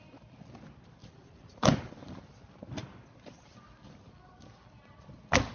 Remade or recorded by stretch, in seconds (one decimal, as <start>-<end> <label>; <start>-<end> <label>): 0.0-1.0 recorded; 1.0-1.9 remade; 1.9-5.5 recorded